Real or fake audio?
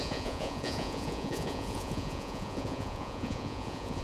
fake